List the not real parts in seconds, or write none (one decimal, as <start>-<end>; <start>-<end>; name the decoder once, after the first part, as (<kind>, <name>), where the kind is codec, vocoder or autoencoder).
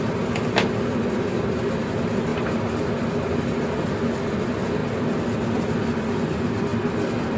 none